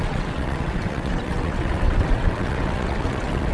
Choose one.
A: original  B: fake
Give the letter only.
B